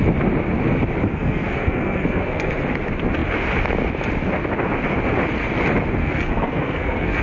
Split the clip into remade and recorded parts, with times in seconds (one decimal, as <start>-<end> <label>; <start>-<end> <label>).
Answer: 0.0-1.1 recorded; 1.1-2.5 remade; 2.5-6.0 recorded; 6.0-7.2 remade